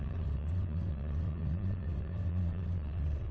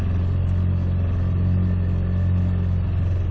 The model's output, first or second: first